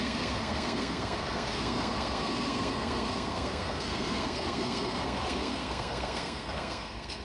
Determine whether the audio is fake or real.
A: fake